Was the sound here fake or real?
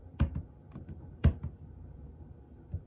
fake